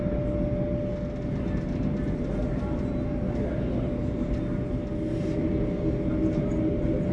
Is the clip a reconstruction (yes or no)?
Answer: no